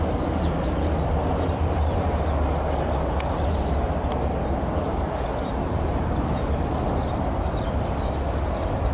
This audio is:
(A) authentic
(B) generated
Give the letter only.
A